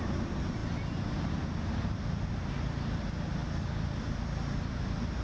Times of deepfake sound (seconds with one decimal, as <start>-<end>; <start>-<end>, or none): none